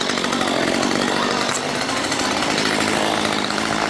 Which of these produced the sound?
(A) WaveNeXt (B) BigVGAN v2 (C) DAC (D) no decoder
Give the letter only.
D